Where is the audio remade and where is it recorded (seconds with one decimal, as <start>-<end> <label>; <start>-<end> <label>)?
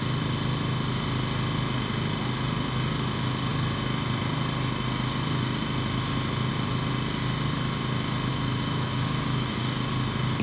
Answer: 0.0-8.3 recorded; 8.3-9.6 remade; 9.6-10.4 recorded